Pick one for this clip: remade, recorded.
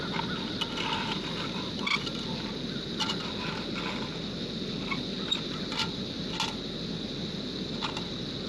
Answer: recorded